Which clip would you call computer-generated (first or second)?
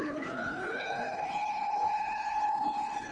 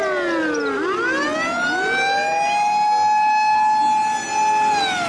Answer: first